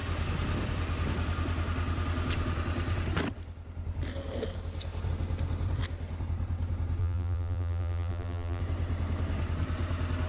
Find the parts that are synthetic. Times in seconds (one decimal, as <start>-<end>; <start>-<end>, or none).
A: 7.0-8.6